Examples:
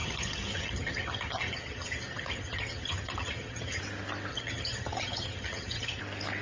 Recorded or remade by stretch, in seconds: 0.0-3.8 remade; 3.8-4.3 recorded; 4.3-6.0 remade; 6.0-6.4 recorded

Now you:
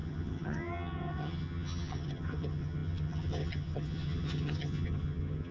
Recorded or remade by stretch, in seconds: 0.0-5.5 remade

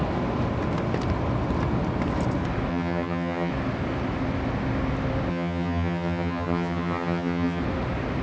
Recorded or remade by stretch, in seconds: 0.0-2.7 recorded; 2.7-3.5 remade; 3.5-5.3 recorded; 5.3-7.6 remade; 7.6-8.2 recorded

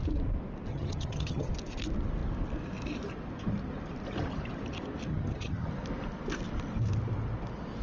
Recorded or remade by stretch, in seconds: 0.0-0.7 recorded; 0.7-1.5 remade; 1.5-5.1 recorded; 5.1-5.7 remade; 5.7-7.8 recorded